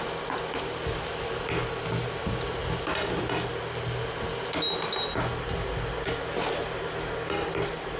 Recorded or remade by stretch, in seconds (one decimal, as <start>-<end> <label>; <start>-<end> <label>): 0.0-8.0 recorded